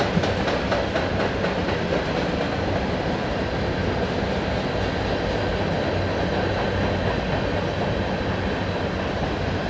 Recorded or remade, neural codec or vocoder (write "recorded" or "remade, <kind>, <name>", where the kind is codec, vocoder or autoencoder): recorded